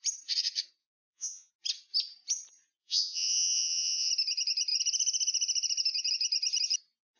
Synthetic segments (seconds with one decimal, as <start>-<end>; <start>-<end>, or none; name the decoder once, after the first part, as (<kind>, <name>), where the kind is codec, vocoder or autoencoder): 0.8-1.5 (vocoder, Vocos); 2.8-4.1